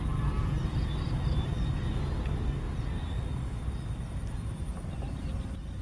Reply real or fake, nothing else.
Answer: real